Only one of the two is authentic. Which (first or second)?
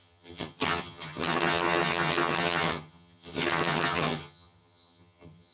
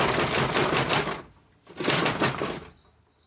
second